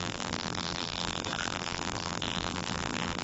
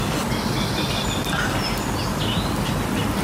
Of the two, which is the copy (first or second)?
first